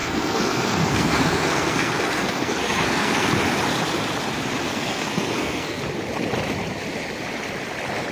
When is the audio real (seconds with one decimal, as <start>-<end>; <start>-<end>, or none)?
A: 3.3-4.7; 5.8-8.1